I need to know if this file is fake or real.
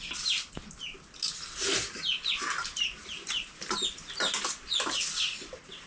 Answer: real